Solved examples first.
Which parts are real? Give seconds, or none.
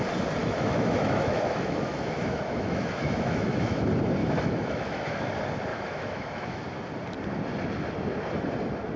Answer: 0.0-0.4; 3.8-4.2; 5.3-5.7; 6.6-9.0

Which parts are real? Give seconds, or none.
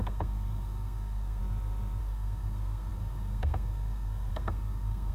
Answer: 1.4-2.0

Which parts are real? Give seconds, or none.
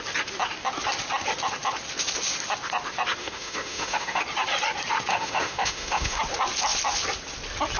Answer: 0.0-3.2; 4.2-5.1; 6.2-7.8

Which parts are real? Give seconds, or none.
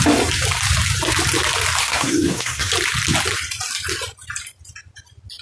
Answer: 0.0-1.8; 2.7-5.4